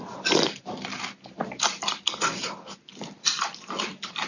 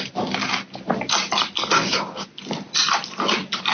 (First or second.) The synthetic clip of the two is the first